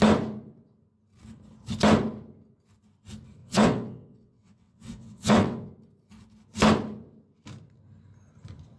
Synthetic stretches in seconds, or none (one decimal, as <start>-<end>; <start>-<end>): 3.4-5.7